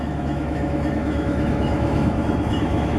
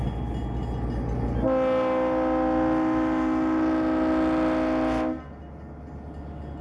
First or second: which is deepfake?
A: first